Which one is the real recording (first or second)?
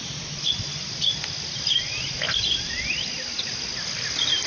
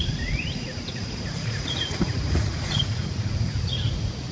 first